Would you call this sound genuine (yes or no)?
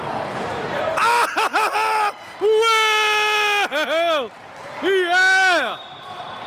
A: yes